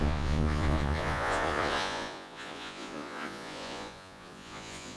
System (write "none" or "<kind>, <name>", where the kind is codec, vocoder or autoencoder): vocoder, Vocos